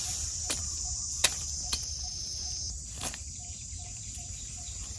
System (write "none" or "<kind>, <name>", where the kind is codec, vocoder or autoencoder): vocoder, BigVGAN v2